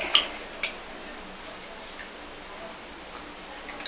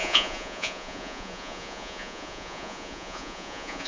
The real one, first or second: first